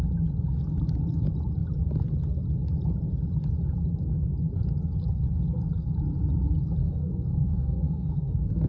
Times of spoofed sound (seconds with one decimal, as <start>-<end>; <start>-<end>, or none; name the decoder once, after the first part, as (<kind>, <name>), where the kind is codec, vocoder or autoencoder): 6.8-8.7 (codec, SNAC)

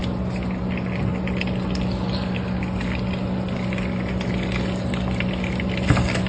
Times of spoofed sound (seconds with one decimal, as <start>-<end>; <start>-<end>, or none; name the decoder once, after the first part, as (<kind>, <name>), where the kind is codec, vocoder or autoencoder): none